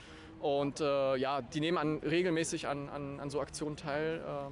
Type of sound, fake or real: real